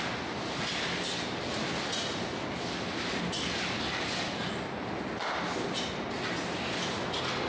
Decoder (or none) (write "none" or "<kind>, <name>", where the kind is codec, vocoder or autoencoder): none